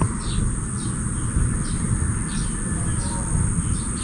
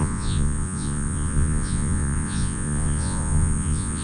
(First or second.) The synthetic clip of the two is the second